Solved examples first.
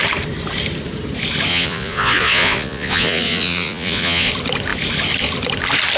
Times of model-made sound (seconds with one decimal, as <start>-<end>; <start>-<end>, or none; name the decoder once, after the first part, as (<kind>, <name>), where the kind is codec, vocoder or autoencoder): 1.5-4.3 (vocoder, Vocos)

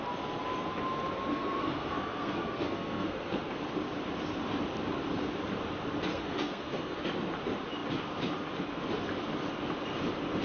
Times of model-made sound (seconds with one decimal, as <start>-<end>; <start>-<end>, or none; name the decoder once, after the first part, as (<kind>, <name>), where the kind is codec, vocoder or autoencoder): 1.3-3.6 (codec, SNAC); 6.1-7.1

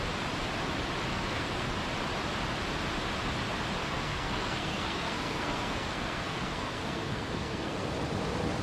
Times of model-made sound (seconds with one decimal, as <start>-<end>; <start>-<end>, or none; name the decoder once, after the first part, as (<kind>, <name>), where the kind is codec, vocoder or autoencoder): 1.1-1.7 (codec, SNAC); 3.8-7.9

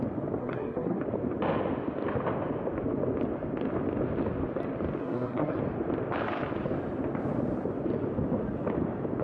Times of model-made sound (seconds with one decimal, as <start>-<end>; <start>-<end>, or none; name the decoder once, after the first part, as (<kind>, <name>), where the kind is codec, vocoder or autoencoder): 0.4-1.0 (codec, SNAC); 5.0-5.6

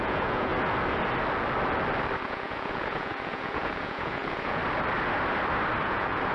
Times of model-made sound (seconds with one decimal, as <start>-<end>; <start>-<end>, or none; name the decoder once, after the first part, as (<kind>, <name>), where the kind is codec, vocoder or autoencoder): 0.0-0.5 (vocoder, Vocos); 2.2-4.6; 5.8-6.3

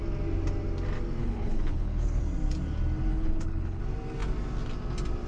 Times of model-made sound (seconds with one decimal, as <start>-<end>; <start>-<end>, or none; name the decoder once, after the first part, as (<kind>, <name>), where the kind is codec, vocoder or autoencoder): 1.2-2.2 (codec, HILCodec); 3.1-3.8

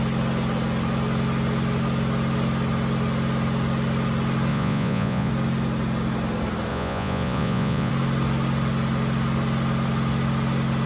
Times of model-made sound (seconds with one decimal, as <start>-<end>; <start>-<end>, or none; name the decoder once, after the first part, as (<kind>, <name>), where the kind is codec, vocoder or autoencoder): 4.5-5.3 (vocoder, Vocos); 6.7-7.9